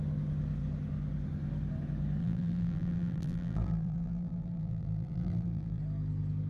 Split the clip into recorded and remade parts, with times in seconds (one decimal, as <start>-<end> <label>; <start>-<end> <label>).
0.0-2.2 recorded; 2.2-5.8 remade; 5.8-6.5 recorded